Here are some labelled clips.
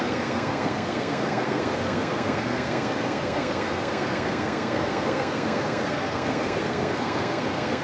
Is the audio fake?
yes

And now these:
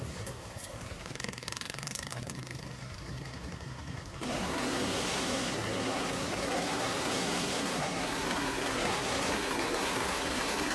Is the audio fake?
yes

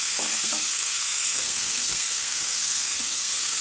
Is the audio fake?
yes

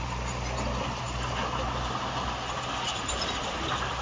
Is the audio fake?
no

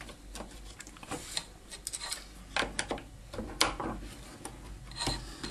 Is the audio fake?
no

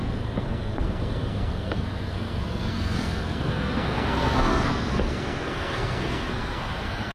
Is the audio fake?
yes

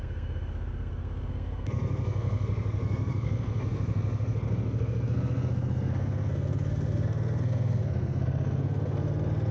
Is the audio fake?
yes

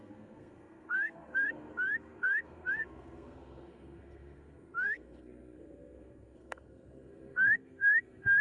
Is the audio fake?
yes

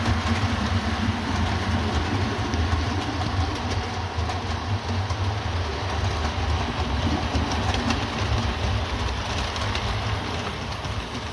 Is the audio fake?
no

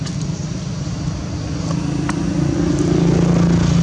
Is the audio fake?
no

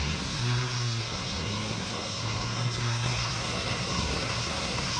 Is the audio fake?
yes